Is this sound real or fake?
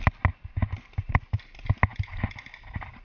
real